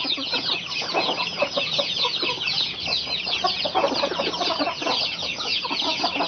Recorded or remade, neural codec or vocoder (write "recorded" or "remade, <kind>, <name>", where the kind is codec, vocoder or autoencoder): remade, vocoder, Vocos